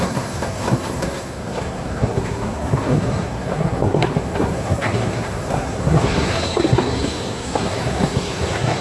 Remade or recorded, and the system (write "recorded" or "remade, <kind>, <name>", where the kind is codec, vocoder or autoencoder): remade, codec, SNAC